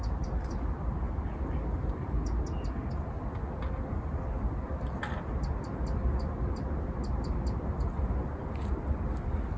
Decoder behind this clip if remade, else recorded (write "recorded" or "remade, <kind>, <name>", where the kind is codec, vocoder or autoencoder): recorded